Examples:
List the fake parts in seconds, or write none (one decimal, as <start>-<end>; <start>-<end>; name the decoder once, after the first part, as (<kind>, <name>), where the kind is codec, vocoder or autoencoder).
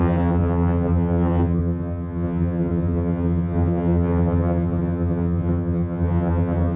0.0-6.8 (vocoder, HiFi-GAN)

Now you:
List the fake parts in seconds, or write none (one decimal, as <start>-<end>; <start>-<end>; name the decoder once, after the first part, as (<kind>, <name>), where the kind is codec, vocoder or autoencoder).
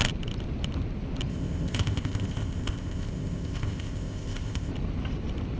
1.3-4.7 (codec, ZipCodec)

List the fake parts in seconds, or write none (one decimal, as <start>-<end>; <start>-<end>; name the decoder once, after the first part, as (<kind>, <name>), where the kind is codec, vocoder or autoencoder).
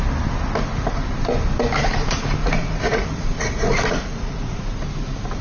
2.4-4.6 (vocoder, Vocos)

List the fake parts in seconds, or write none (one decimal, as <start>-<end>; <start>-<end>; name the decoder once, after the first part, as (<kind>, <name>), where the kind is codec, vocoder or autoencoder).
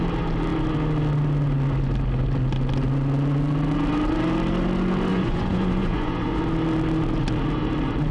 5.1-6.4 (vocoder, Vocos)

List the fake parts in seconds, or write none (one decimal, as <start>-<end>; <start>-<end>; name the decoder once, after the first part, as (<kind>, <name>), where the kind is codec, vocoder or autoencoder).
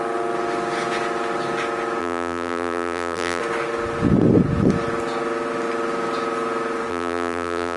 2.0-3.4 (vocoder, BigVGAN v2); 6.9-7.8